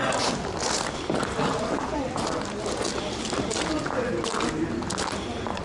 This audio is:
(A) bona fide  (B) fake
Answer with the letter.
A